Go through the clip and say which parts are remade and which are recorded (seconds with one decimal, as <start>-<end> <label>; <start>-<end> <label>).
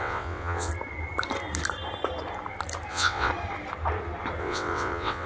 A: 0.0-0.7 remade; 0.7-2.9 recorded; 2.9-3.3 remade; 3.3-4.4 recorded; 4.4-5.3 remade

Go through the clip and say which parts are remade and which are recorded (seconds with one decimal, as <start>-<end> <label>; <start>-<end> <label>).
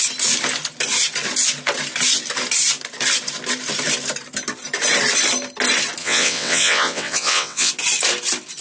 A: 0.0-6.0 recorded; 6.0-7.7 remade; 7.7-8.6 recorded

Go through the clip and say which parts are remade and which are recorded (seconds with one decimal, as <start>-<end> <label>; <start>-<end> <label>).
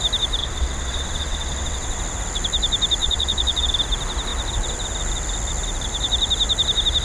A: 0.0-0.4 recorded; 0.4-2.0 remade; 2.0-3.0 recorded; 3.0-3.7 remade; 3.7-7.0 recorded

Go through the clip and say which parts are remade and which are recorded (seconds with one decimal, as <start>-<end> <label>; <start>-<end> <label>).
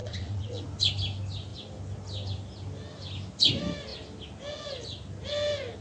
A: 0.0-0.6 remade; 0.6-5.8 recorded